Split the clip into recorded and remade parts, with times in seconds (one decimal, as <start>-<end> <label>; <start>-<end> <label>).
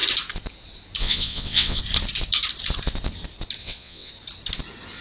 0.0-1.0 recorded; 1.0-1.8 remade; 1.8-3.6 recorded; 3.6-4.1 remade; 4.1-5.0 recorded